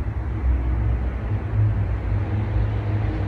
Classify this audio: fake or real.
real